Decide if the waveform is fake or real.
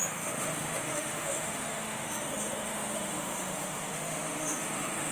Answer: fake